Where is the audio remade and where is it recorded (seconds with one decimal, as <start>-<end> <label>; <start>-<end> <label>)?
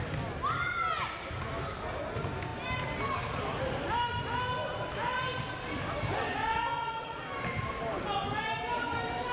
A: 0.0-6.5 recorded; 6.5-7.2 remade; 7.2-9.3 recorded